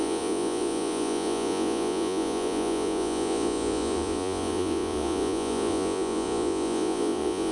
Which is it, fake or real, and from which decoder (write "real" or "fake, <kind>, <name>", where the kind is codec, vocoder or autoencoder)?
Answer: fake, vocoder, Vocos